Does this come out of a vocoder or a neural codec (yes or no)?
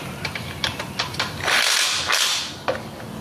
no